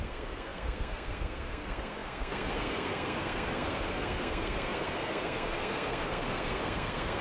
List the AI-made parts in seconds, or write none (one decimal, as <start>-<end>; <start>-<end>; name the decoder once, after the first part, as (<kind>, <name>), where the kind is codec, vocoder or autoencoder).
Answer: 0.0-7.2 (codec, SNAC)